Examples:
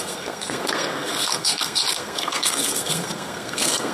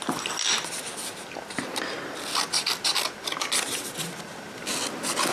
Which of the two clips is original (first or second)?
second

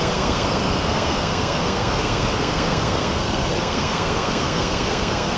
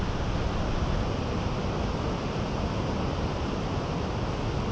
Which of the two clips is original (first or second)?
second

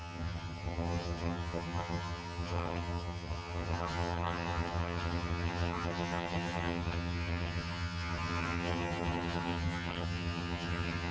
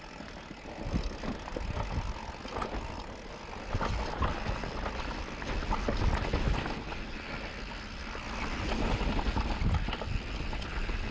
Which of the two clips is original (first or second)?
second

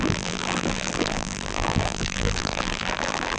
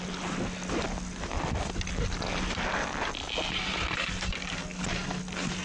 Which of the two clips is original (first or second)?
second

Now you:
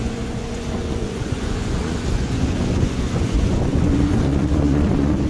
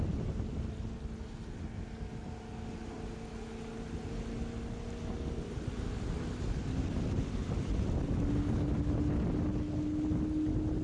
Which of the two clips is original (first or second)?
second